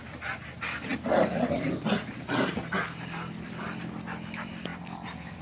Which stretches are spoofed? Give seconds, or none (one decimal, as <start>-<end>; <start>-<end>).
none